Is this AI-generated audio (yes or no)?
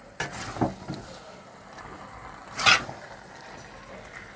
no